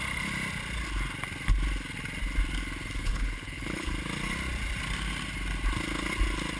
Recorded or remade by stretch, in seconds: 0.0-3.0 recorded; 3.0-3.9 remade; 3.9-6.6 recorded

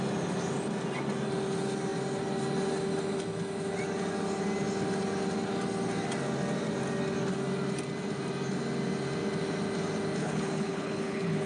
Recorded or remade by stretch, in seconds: 0.0-10.2 recorded; 10.2-11.5 remade

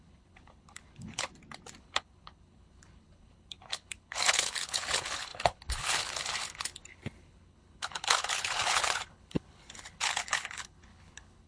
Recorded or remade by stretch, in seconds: 0.0-1.3 remade; 1.3-1.8 recorded; 1.8-11.5 remade

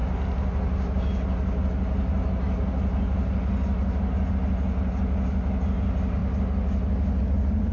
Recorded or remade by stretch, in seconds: 0.0-7.7 recorded